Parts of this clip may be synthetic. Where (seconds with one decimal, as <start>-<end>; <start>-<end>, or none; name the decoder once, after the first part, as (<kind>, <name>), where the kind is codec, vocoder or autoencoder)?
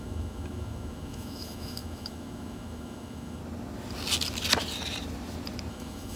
0.0-3.4 (autoencoder, DAC-VAE); 5.7-6.2